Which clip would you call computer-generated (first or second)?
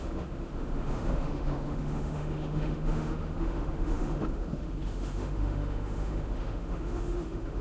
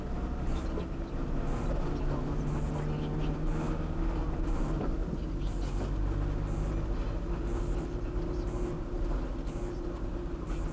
first